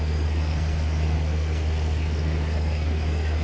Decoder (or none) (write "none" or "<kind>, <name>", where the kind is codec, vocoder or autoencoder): codec, SNAC